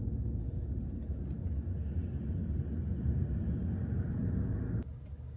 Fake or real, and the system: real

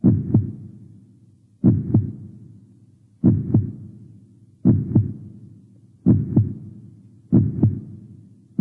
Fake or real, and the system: real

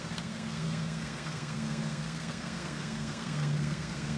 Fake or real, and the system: fake, codec, SNAC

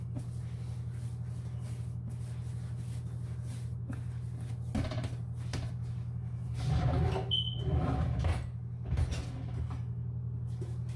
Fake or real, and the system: real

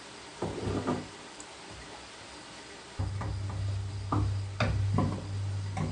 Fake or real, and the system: real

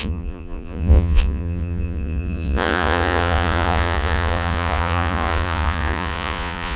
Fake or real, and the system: fake, vocoder, Vocos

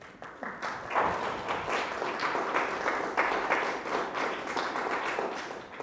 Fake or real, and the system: real